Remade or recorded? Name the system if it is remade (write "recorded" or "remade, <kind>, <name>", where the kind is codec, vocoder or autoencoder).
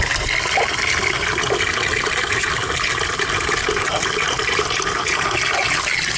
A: recorded